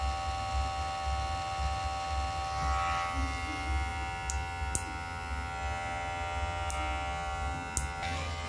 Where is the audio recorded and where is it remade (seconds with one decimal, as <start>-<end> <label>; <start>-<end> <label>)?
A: 0.0-8.5 recorded